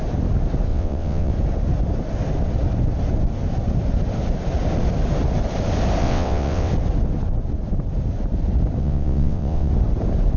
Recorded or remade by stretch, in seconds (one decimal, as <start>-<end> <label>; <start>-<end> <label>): 0.0-0.7 recorded; 0.7-1.3 remade; 1.3-6.0 recorded; 6.0-6.7 remade; 6.7-8.8 recorded; 8.8-9.7 remade; 9.7-10.4 recorded